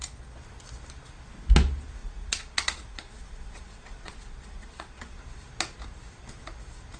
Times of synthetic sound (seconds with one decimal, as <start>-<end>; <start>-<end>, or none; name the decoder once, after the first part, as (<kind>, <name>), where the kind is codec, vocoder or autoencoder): 2.0-5.2 (vocoder, Vocos)